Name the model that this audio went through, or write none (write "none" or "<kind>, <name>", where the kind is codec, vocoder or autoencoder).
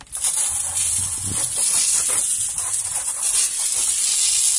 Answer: none